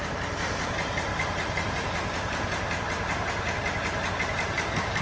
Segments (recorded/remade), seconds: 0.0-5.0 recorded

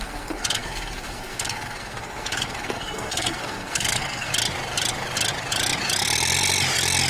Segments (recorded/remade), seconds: 0.0-4.3 remade; 4.3-7.1 recorded